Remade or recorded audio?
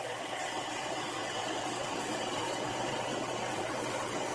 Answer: remade